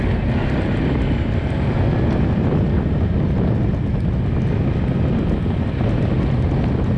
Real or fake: real